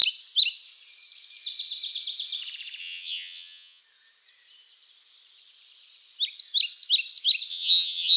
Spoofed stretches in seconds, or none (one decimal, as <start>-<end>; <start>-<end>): 2.8-3.8; 7.5-8.2